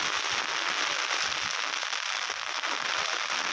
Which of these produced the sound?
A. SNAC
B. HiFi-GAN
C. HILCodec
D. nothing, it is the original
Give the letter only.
D